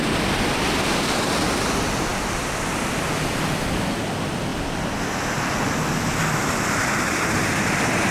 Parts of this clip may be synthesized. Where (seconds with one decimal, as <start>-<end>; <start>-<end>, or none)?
none